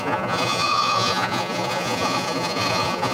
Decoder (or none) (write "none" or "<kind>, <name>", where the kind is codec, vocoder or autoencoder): vocoder, Vocos